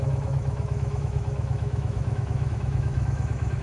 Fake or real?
fake